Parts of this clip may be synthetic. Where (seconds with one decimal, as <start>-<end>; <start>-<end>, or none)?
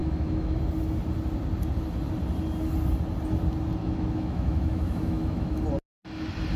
0.0-0.6; 3.8-5.6